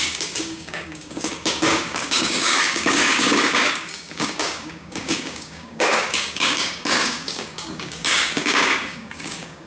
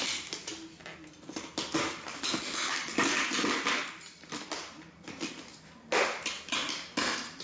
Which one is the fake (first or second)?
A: first